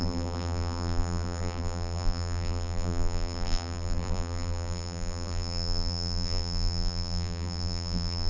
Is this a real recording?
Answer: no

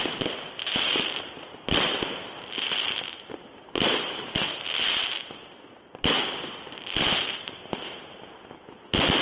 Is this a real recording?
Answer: no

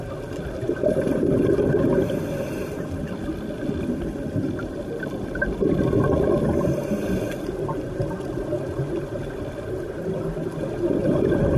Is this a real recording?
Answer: yes